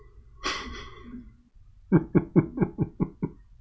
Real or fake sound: real